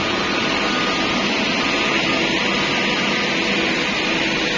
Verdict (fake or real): real